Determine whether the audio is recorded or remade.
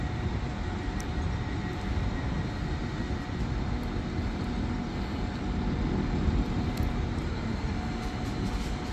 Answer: recorded